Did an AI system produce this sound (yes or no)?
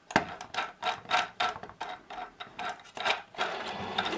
no